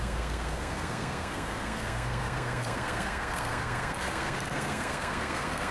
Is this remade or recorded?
remade